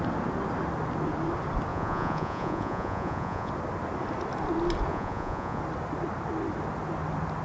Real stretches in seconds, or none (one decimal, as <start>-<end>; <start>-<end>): 0.0-1.7; 3.5-4.9; 5.6-7.4